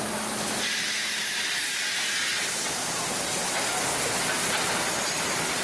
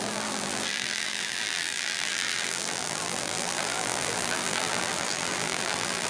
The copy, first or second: second